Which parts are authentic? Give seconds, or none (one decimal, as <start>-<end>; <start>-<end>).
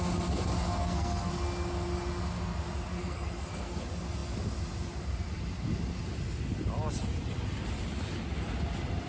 0.0-0.8; 1.3-3.0; 3.8-9.1